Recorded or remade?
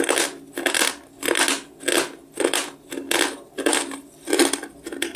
recorded